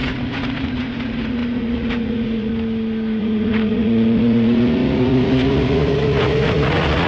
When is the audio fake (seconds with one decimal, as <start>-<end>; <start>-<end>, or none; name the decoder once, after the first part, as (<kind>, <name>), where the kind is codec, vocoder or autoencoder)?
0.0-2.5 (vocoder, Vocos); 3.2-7.1